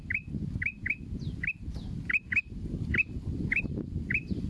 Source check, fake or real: fake